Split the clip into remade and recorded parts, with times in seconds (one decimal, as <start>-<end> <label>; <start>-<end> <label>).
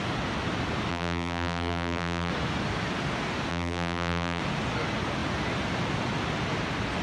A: 0.0-0.9 recorded; 0.9-2.3 remade; 2.3-3.5 recorded; 3.5-4.4 remade; 4.4-7.0 recorded